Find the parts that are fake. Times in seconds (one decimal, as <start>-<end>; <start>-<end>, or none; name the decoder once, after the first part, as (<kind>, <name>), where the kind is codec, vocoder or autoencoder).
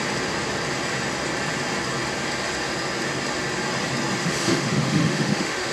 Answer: 4.2-5.7 (autoencoder, DAC-VAE)